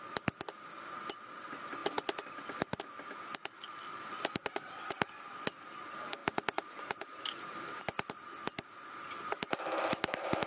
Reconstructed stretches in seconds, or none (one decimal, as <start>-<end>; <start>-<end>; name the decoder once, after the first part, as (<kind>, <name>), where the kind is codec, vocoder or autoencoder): none